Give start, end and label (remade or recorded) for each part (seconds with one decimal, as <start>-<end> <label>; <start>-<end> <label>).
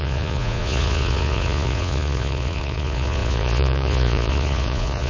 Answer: 0.0-5.1 remade